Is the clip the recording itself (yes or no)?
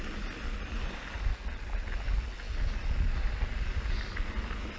yes